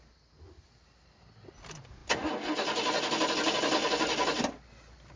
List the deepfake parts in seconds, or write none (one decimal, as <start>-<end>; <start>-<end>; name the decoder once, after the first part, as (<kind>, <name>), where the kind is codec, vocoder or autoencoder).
none